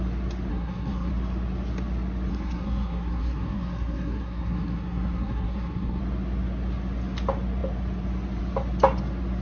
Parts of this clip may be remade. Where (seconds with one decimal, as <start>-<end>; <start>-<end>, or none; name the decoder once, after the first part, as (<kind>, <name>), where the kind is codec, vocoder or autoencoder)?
0.5-1.1 (codec, SNAC); 2.3-6.0